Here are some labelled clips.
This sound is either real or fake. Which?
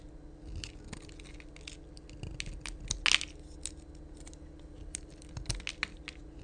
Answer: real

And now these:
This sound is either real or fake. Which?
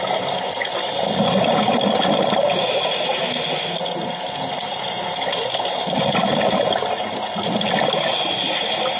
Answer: real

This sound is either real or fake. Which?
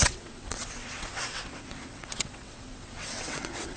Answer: fake